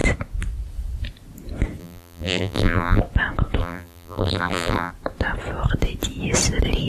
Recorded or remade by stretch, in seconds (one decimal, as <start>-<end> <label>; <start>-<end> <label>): 0.0-1.8 recorded; 1.8-3.0 remade; 3.0-3.6 recorded; 3.6-4.9 remade; 4.9-6.9 recorded